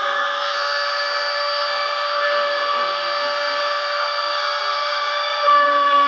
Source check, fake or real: fake